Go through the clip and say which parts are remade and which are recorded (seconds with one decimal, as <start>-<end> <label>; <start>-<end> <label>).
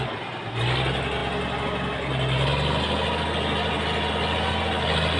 0.0-5.2 recorded